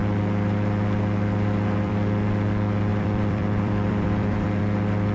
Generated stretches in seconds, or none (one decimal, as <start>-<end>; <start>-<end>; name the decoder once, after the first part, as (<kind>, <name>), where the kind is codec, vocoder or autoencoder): 0.0-1.9 (vocoder, BigVGAN v2); 2.9-4.6